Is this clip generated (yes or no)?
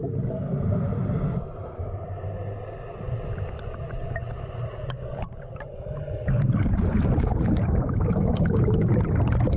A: no